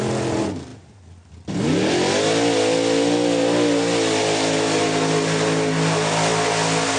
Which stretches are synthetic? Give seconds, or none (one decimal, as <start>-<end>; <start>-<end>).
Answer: none